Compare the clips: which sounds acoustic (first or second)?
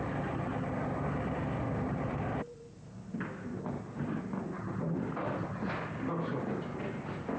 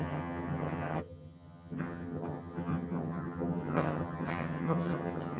first